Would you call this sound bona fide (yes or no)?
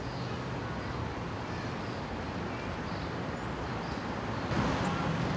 yes